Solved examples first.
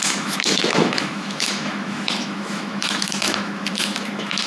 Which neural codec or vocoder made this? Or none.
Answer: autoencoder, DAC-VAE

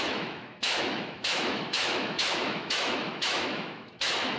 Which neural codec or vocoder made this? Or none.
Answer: autoencoder, DAC-VAE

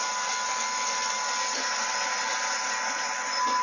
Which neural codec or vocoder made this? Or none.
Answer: none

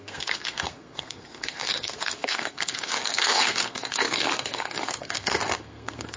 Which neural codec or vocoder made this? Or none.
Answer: codec, SNAC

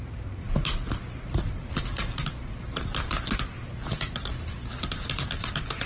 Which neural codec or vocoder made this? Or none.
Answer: none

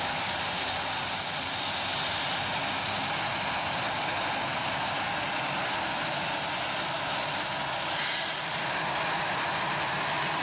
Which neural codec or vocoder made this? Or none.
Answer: none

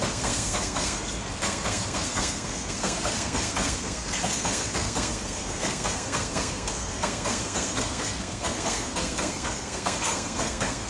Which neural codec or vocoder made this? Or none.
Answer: codec, SNAC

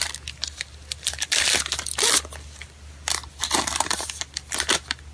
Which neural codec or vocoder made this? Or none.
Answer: none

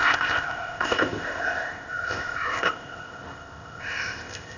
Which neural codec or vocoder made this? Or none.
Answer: codec, ZipCodec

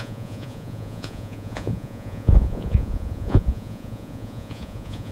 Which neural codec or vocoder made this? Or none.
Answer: vocoder, Vocos